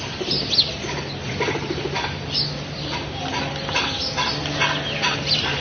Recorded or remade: recorded